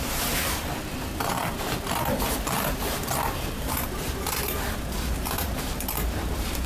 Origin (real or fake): fake